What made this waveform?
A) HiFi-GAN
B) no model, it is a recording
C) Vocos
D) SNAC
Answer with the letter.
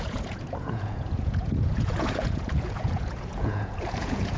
C